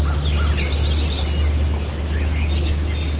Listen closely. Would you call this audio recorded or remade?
recorded